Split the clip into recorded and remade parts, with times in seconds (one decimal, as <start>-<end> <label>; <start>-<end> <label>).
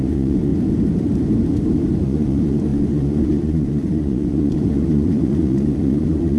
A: 0.0-0.5 remade; 0.5-2.0 recorded; 2.0-6.4 remade